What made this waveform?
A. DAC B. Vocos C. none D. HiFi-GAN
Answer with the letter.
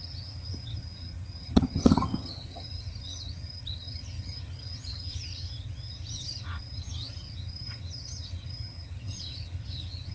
D